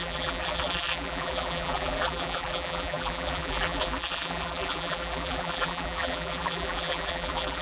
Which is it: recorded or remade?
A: remade